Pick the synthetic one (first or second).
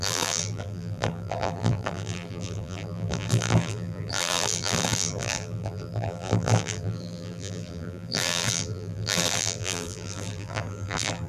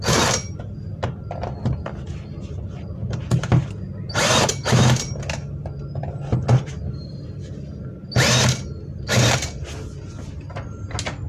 first